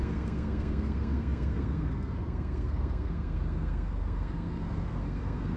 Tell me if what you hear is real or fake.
fake